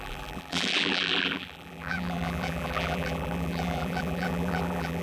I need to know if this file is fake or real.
fake